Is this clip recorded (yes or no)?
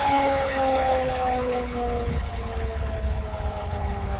no